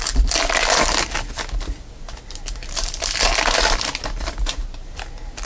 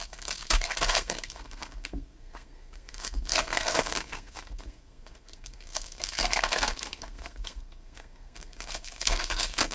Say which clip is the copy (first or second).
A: second